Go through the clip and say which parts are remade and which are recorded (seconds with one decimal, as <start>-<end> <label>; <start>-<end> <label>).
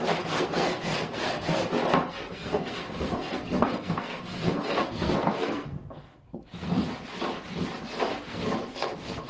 0.0-1.6 remade; 1.6-2.1 recorded; 2.1-6.8 remade; 6.8-8.1 recorded; 8.1-9.3 remade